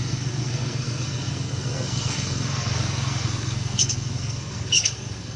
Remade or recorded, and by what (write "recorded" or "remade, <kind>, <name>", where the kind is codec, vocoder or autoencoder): remade, codec, SNAC